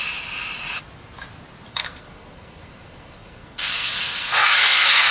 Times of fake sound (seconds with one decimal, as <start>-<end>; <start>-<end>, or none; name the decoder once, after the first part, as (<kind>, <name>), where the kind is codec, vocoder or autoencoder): 1.7-5.1 (codec, SNAC)